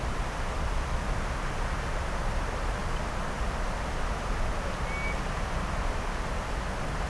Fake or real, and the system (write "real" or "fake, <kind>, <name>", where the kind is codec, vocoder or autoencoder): real